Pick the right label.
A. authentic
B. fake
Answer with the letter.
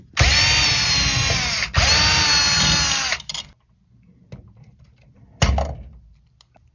A